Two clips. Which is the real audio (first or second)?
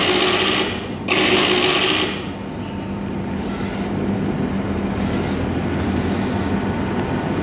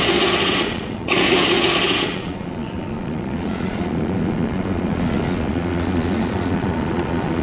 first